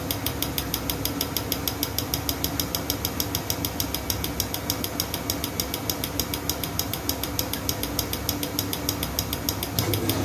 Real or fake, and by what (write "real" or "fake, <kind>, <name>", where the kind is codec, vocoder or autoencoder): real